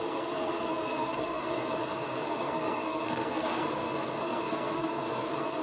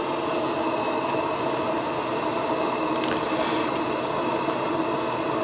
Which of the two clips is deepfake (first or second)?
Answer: first